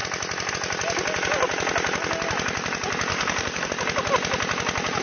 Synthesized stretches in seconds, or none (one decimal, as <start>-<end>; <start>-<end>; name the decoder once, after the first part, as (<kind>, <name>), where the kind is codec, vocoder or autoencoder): 3.1-3.7 (codec, SNAC)